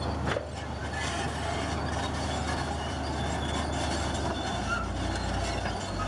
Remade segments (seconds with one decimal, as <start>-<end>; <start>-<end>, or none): none

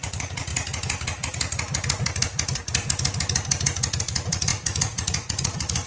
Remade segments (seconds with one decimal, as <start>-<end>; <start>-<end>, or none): 0.0-0.5; 4.0-5.9

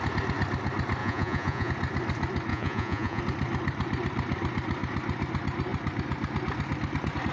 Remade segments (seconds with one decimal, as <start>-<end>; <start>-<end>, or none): 1.0-1.7; 2.5-3.2

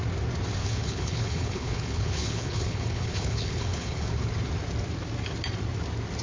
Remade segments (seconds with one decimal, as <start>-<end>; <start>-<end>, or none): 0.6-4.3

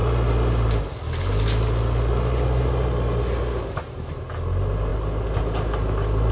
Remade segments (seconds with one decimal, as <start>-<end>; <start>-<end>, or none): none

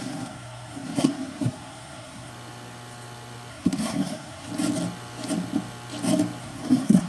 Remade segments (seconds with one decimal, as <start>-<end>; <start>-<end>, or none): 0.0-2.3; 3.5-4.5; 6.4-7.1

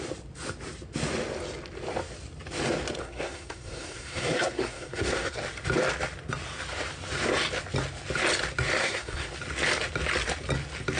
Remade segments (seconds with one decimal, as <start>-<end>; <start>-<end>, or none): 3.0-5.4; 8.8-9.3